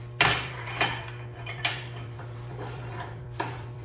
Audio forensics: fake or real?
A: fake